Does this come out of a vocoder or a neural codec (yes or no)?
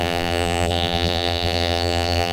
yes